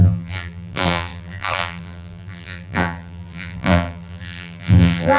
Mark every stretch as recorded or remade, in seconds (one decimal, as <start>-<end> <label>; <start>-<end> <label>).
0.0-5.2 remade